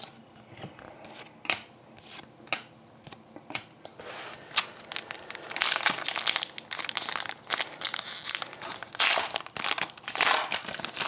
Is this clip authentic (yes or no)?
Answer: yes